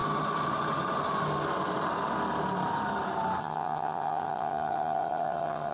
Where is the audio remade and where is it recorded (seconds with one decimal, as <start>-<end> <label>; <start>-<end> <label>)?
0.0-3.4 recorded; 3.4-5.7 remade